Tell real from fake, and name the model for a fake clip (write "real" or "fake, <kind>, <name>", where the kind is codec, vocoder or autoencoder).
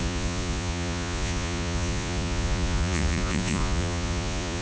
fake, vocoder, Vocos